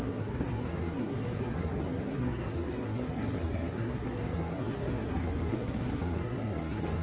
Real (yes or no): no